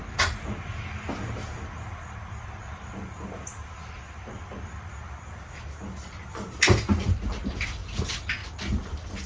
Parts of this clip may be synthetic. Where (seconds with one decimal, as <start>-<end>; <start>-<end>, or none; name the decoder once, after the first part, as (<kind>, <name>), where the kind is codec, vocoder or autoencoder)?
none